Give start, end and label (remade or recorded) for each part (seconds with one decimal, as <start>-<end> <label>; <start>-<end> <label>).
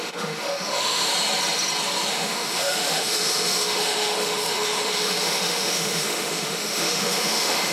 0.0-1.1 remade; 1.1-2.1 recorded; 2.1-7.7 remade